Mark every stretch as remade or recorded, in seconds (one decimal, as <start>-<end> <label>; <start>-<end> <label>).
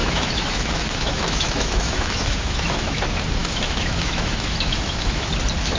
0.0-3.0 remade; 3.0-3.4 recorded; 3.4-5.3 remade; 5.3-5.8 recorded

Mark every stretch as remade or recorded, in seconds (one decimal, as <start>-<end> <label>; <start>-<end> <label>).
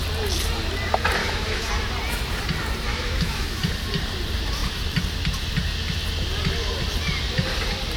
0.0-1.2 recorded; 1.2-1.7 remade; 1.7-2.9 recorded; 2.9-3.6 remade; 3.6-8.0 recorded